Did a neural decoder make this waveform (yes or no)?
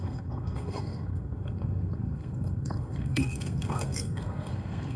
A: yes